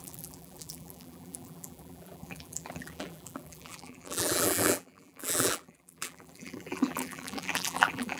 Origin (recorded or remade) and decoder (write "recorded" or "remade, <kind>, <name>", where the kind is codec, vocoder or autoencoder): remade, vocoder, BigVGAN v2